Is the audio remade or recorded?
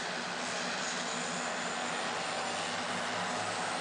recorded